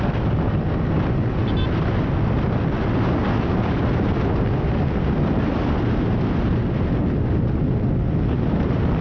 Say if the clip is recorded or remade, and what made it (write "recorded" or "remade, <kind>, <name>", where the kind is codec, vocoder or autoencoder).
recorded